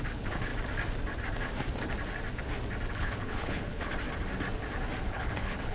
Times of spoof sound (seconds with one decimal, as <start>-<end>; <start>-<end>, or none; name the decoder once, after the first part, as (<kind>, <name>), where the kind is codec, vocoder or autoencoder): 0.0-0.5 (codec, HILCodec); 2.9-3.9; 5.0-5.7